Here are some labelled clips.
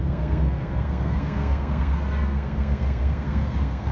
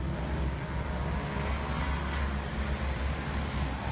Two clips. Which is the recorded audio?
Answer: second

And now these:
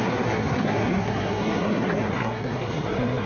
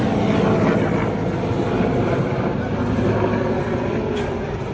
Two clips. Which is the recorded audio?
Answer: second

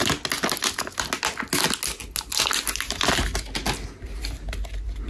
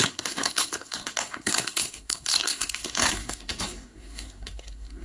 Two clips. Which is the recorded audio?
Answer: first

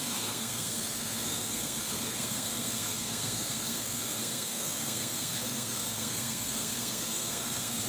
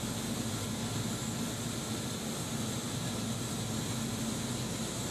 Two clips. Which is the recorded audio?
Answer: second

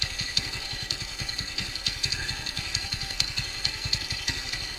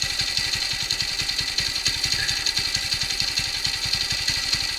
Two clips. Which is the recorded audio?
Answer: second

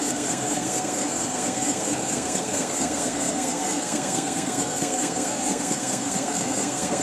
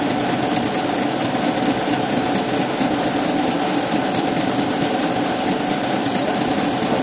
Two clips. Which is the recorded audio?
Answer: second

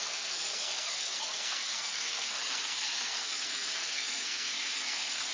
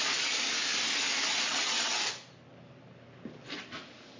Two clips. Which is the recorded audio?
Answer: second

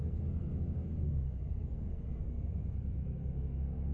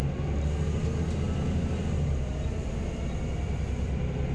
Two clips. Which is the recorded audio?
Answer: second